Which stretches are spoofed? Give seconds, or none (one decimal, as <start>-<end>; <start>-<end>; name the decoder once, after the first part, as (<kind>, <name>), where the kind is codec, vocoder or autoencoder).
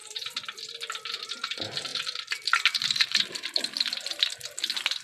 0.0-0.6 (vocoder, BigVGAN v2); 1.9-4.2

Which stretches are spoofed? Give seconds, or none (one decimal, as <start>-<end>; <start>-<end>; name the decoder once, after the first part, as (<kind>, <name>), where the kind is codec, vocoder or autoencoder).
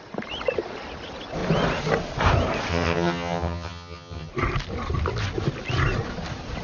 2.7-4.3 (vocoder, HiFi-GAN)